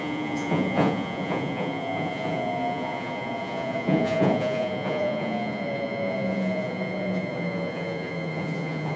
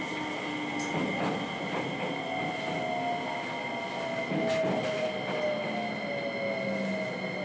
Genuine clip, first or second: second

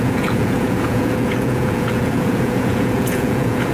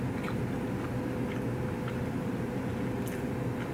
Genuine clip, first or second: second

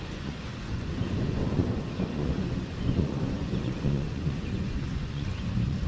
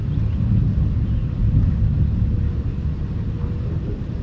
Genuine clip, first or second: second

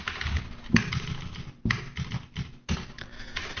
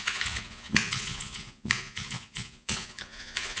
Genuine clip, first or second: first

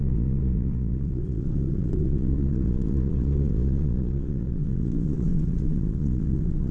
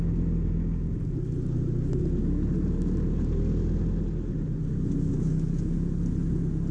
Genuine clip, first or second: second